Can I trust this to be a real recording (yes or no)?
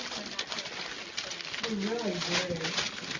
yes